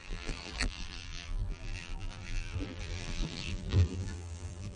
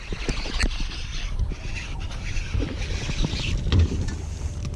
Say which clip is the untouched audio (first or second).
second